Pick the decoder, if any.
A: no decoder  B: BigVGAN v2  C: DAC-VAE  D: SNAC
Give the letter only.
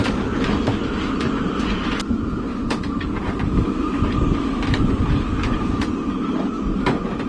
A